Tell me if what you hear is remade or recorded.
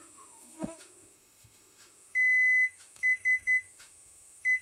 remade